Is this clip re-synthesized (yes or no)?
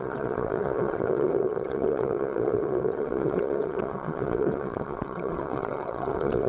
yes